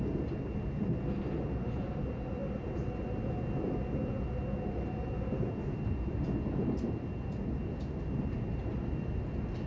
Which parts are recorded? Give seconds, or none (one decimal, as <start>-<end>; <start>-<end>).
0.0-9.7